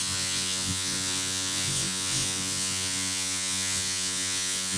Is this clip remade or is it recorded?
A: remade